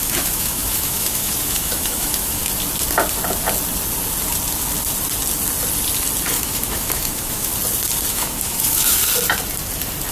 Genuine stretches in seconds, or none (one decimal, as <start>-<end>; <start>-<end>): 2.4-6.3; 7.5-8.1; 9.0-10.1